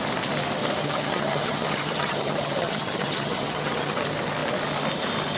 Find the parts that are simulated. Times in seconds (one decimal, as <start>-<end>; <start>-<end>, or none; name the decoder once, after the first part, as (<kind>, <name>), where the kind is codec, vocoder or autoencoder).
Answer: 0.8-4.0 (vocoder, HiFi-GAN)